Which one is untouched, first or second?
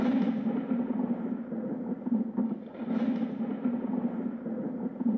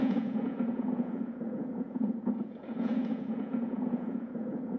first